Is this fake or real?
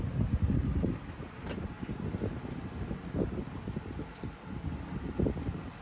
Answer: real